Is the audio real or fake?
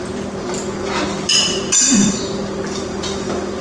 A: real